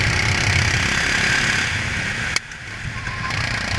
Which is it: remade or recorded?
recorded